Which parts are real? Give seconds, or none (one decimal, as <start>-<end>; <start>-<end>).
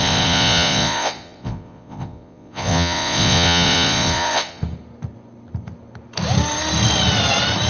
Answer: 4.6-7.7